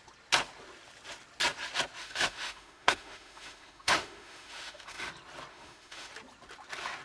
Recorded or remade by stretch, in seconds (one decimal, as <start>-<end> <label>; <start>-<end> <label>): 0.0-2.0 recorded; 2.0-5.1 remade; 5.1-5.5 recorded; 5.5-6.1 remade; 6.1-7.0 recorded